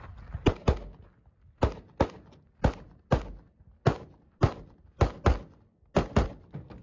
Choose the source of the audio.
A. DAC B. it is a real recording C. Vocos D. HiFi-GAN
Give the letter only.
B